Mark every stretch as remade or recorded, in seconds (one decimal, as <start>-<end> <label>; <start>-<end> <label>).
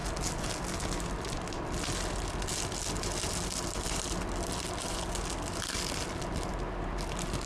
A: 0.0-7.5 recorded